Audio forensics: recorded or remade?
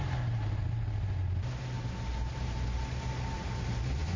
recorded